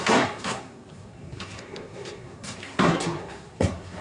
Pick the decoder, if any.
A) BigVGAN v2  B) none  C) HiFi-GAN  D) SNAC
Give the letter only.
D